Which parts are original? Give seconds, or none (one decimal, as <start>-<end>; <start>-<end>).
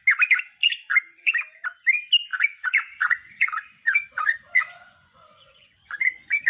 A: 0.0-0.6; 1.3-2.3